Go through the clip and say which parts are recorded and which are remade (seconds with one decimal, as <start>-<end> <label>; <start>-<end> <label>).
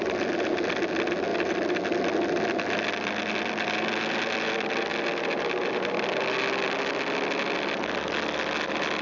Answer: 0.0-1.3 recorded; 1.3-2.1 remade; 2.1-9.0 recorded